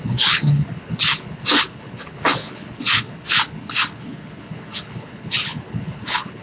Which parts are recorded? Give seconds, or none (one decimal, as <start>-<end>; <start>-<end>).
none